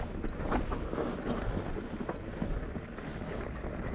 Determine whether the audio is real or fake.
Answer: real